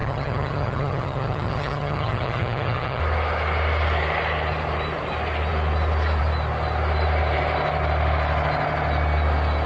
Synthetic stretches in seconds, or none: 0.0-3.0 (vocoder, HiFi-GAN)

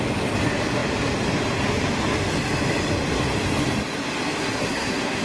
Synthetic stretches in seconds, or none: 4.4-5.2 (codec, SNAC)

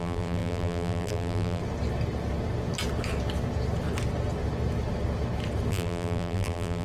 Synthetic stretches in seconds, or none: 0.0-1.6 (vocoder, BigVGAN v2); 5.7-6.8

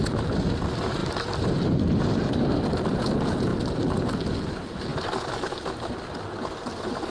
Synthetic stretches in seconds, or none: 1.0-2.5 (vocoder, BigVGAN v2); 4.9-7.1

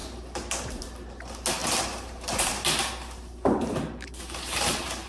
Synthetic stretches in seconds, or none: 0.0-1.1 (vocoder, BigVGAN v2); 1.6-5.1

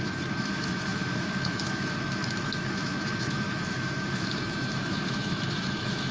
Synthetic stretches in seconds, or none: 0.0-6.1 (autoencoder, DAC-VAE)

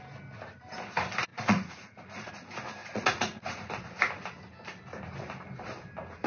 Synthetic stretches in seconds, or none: 1.3-2.3 (vocoder, Vocos); 2.8-3.7